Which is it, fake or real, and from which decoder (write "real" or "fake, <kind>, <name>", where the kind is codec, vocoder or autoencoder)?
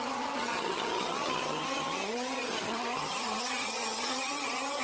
fake, vocoder, HiFi-GAN